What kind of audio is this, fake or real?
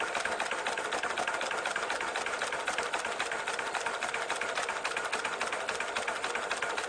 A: real